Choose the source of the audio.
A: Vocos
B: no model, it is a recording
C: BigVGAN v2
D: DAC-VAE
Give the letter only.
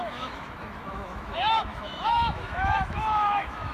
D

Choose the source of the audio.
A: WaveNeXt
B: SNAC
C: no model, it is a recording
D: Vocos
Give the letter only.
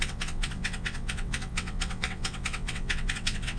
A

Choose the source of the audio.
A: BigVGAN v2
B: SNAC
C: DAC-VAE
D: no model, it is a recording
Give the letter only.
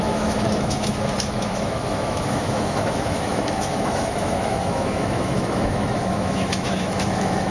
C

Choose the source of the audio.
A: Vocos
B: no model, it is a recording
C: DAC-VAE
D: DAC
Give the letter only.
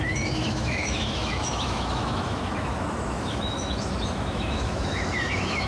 C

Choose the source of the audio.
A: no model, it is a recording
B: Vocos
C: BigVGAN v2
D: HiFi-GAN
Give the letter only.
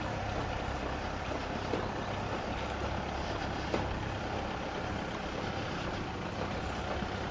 C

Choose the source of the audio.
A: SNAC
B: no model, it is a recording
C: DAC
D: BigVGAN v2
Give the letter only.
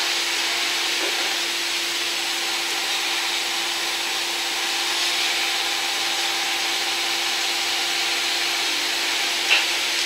B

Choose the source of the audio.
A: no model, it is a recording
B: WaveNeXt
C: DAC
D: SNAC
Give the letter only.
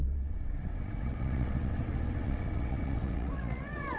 B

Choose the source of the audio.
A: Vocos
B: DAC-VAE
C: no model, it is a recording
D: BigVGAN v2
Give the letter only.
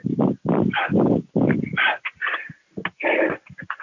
C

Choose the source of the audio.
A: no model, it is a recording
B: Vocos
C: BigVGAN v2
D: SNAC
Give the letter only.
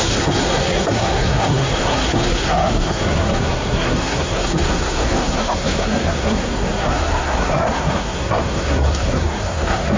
D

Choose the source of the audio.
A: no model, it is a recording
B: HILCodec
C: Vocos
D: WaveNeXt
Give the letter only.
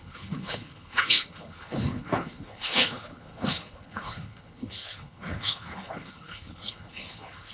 B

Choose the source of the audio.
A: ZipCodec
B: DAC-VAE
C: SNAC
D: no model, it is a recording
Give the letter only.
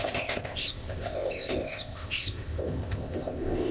A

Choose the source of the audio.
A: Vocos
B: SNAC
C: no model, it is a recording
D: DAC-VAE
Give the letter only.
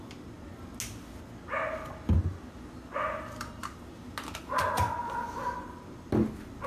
C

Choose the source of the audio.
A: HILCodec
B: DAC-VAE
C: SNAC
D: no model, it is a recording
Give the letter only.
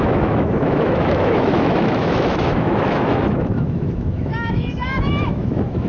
B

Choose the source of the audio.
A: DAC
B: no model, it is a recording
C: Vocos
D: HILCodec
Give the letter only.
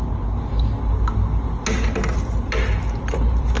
B